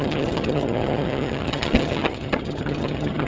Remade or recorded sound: remade